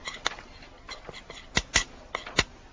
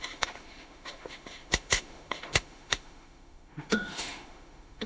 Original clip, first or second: first